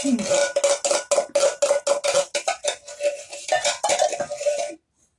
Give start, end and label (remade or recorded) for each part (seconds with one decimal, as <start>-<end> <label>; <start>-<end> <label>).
0.0-5.2 recorded